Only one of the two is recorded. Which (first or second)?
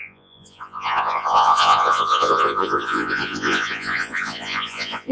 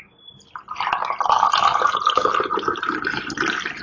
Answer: second